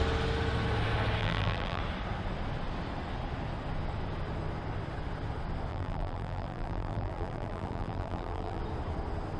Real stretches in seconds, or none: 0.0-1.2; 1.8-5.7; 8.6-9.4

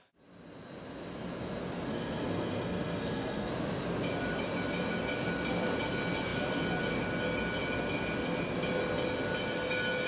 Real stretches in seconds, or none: 0.0-1.9; 3.5-10.1

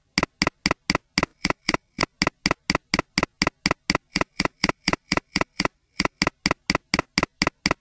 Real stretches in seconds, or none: 0.0-1.3; 2.0-4.1; 6.2-7.8

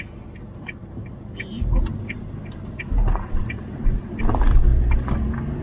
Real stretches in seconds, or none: 0.0-0.8; 4.2-4.7

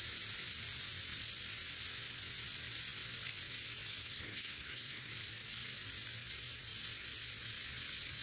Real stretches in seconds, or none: 0.0-4.0; 5.1-8.2